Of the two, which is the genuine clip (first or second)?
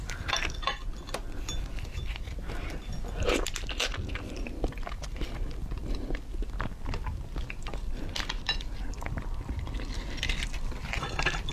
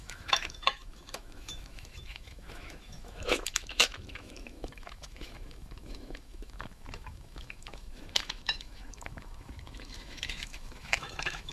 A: first